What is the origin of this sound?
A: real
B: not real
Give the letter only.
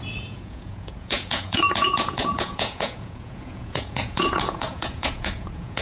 B